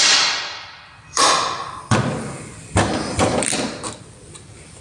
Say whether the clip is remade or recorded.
remade